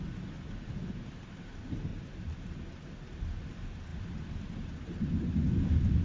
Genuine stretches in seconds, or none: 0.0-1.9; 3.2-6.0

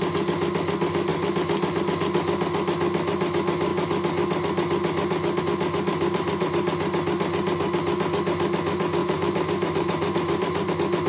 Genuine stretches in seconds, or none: 0.0-5.9; 6.5-9.0; 10.7-11.1

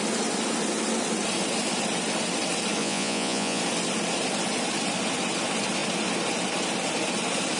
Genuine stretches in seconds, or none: 0.0-2.8; 3.6-7.6